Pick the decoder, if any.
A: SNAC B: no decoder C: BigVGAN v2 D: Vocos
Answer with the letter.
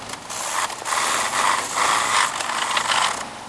B